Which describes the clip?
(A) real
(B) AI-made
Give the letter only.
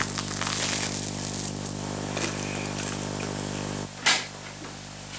A